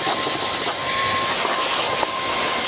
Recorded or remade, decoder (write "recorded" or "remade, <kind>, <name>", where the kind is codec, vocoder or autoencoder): recorded